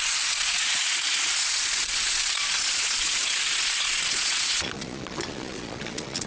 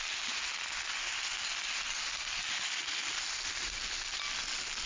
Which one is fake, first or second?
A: first